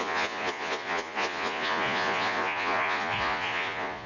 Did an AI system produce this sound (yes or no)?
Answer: yes